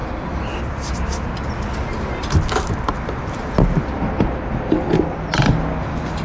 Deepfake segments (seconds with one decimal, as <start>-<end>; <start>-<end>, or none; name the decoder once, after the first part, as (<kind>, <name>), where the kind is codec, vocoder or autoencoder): none